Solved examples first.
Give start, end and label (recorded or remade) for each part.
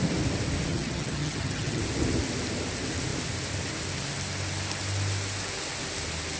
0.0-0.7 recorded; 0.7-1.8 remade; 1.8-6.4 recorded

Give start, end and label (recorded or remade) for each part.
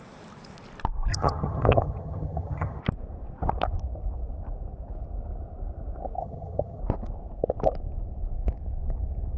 0.0-1.1 recorded; 1.1-2.8 remade; 2.8-6.2 recorded; 6.2-6.8 remade; 6.8-9.4 recorded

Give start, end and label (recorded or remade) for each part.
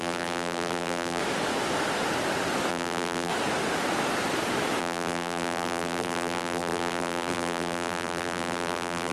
0.0-1.2 remade; 1.2-2.7 recorded; 2.7-3.3 remade; 3.3-4.8 recorded; 4.8-9.1 remade